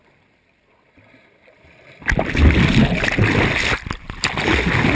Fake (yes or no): no